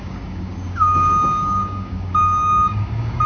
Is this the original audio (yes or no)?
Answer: no